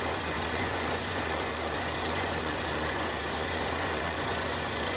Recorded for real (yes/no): no